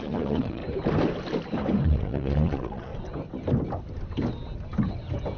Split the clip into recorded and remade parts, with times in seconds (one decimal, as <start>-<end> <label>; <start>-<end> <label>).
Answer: 0.0-0.6 remade; 0.6-1.8 recorded; 1.8-2.9 remade; 2.9-5.4 recorded